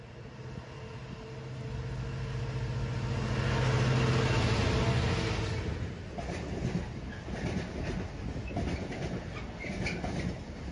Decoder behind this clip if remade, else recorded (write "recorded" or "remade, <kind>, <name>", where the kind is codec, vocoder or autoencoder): recorded